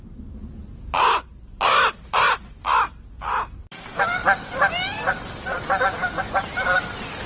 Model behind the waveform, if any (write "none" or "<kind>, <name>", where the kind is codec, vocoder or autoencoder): none